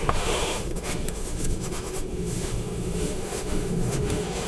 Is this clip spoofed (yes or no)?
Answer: yes